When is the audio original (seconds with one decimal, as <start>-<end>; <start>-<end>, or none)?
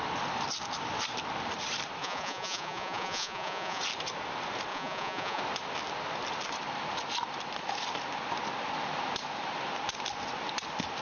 0.0-2.0; 3.8-4.7; 5.4-11.0